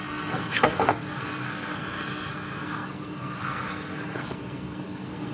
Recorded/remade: remade